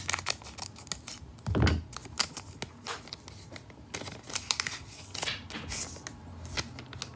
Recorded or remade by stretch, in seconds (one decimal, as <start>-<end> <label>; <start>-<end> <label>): 0.0-7.2 recorded